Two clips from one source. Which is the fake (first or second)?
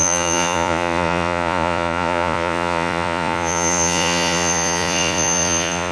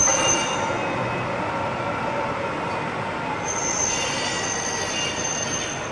first